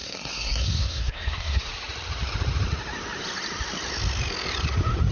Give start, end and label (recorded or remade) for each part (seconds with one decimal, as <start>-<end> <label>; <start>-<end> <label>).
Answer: 0.0-1.7 remade; 1.7-5.1 recorded